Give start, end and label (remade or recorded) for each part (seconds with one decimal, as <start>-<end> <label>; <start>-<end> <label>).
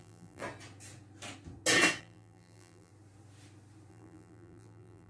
0.0-0.4 remade; 0.4-2.0 recorded; 2.0-2.9 remade; 2.9-3.9 recorded; 3.9-5.1 remade